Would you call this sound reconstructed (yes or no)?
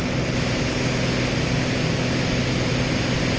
no